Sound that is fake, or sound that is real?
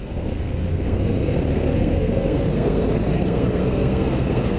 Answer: fake